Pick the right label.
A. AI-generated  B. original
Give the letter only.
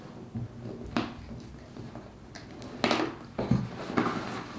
B